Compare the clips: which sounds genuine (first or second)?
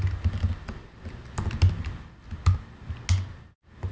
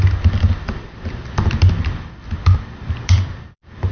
first